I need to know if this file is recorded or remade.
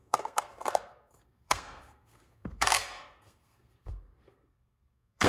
remade